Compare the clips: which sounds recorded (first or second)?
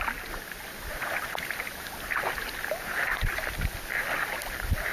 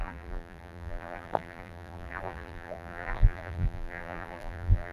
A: first